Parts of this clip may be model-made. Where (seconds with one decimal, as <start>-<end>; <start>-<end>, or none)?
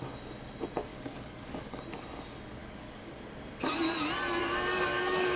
0.9-1.8; 2.6-3.1; 4.4-5.4